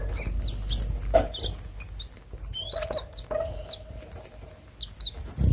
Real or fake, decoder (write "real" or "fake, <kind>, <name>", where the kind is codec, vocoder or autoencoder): real